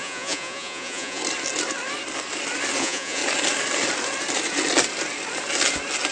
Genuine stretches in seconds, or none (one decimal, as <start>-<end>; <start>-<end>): 1.2-2.8; 3.2-6.1